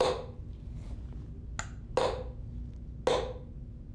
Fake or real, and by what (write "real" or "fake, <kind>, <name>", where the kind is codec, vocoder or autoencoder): real